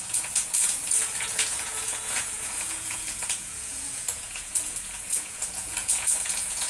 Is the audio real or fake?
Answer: fake